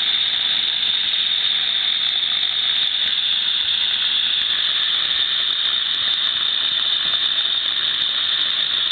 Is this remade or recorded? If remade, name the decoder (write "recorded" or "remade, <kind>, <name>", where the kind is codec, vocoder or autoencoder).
recorded